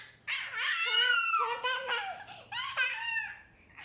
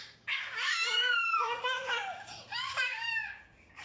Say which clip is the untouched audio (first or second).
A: first